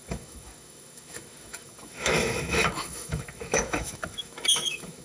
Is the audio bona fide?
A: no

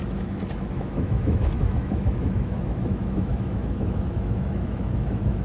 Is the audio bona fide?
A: no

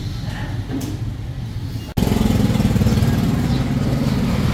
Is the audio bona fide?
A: yes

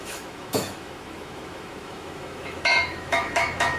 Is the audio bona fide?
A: no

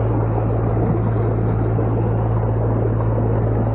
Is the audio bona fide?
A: yes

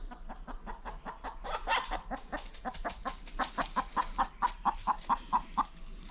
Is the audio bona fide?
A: yes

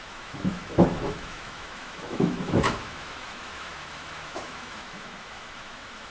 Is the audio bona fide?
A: no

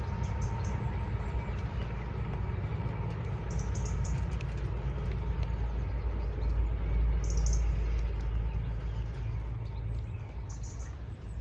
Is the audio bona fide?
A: yes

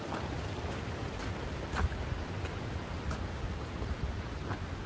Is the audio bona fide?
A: yes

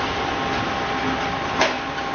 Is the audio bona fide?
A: yes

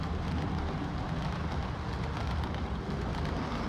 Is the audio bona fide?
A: yes